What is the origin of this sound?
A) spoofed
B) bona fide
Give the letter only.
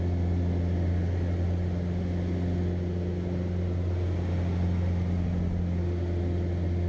B